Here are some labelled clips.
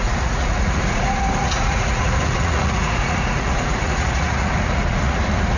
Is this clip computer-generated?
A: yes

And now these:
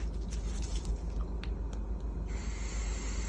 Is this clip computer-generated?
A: no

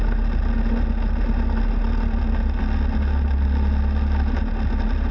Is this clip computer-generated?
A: no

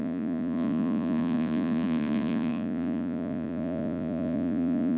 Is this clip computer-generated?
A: yes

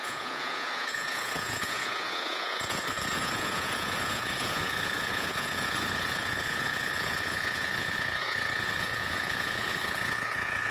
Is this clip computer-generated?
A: yes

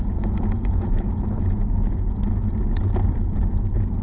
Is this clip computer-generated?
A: yes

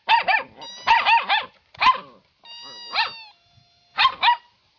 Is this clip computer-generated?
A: no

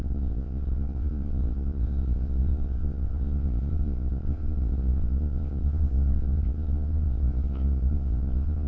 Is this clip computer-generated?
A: yes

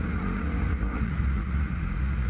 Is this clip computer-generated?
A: yes